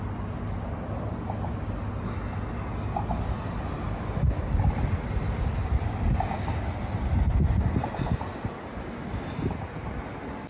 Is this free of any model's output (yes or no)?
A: yes